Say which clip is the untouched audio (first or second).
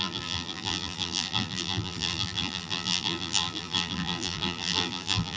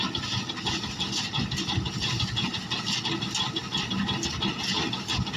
second